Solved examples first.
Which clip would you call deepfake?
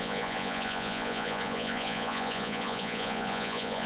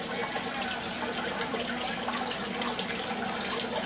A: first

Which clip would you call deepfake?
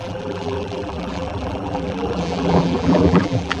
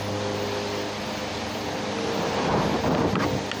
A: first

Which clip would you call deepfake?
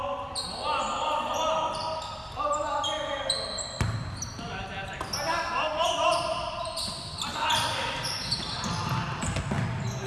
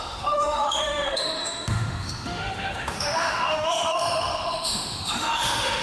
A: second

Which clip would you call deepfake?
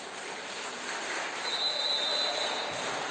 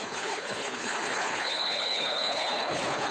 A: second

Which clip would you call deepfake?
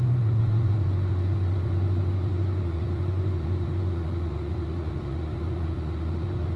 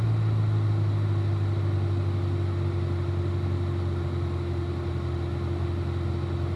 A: first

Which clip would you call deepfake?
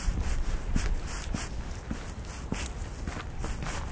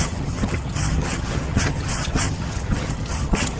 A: second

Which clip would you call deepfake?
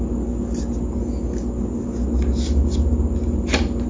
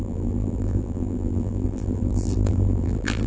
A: second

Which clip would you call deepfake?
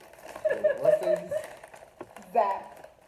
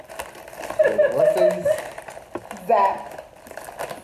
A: first